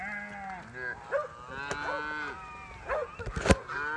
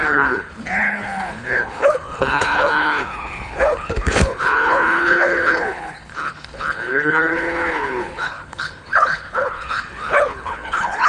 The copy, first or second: second